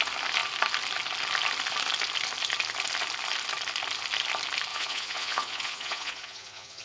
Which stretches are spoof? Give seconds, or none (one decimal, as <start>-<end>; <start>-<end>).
4.7-6.8